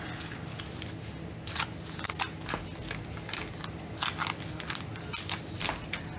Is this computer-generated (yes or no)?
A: no